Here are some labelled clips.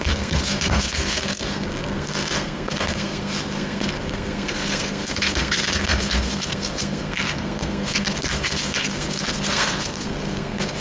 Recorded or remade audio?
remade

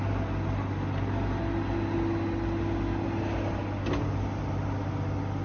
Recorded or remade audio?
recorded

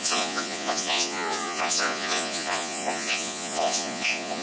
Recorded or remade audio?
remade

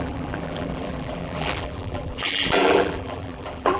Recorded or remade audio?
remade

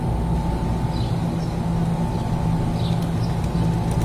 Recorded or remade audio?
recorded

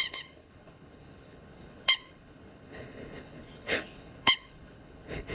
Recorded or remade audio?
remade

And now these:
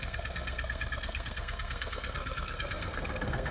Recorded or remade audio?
remade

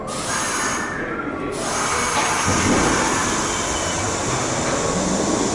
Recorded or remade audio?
recorded